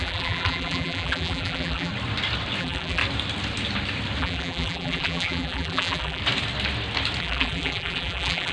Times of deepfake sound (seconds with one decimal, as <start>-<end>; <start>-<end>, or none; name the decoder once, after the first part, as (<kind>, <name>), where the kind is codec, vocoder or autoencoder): 0.0-1.9 (vocoder, BigVGAN v2); 2.6-3.0; 4.2-6.2; 7.2-8.5